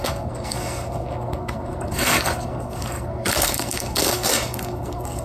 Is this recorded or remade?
remade